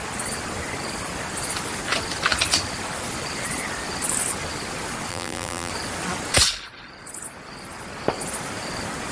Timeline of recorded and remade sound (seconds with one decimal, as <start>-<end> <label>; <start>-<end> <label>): 0.0-5.1 recorded; 5.1-5.7 remade; 5.7-9.1 recorded